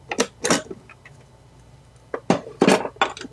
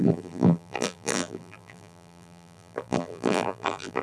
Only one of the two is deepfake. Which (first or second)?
second